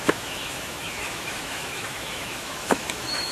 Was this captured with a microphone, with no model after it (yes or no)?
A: no